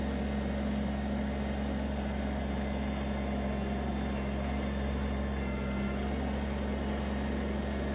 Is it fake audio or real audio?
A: real